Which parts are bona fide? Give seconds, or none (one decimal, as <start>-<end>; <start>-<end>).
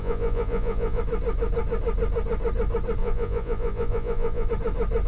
1.0-3.0; 4.5-5.1